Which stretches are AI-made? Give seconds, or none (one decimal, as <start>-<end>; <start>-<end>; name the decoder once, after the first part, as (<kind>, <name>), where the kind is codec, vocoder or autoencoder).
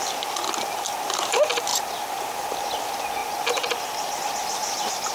3.2-4.2 (vocoder, BigVGAN v2)